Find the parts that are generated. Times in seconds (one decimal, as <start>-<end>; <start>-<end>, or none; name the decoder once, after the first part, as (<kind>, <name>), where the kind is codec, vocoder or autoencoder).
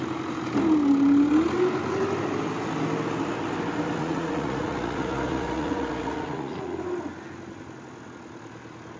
4.0-6.8 (vocoder, Vocos)